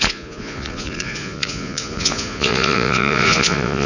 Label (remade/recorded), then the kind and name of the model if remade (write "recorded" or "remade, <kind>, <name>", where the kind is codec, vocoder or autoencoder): remade, vocoder, Vocos